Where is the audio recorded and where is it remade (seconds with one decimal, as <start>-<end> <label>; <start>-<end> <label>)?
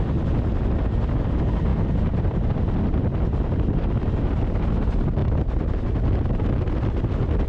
0.0-7.5 recorded